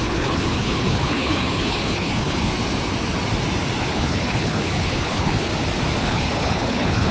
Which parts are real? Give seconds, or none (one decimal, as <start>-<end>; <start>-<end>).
2.5-3.8; 5.5-6.0